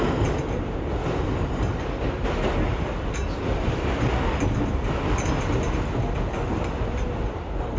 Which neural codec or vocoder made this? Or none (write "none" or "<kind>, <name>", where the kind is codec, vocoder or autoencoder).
none